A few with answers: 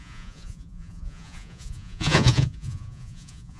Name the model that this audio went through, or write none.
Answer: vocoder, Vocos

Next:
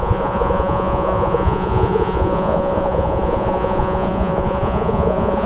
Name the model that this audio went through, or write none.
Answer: vocoder, Vocos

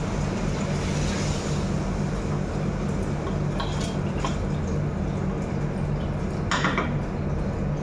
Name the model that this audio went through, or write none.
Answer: none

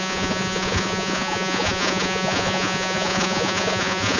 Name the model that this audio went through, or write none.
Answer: vocoder, Vocos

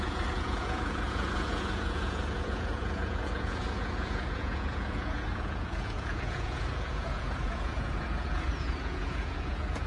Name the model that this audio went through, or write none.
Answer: vocoder, Vocos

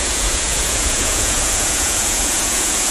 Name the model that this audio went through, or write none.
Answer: vocoder, Vocos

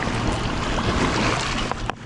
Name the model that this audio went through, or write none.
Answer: none